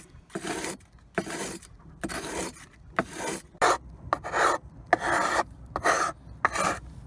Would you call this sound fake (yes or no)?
no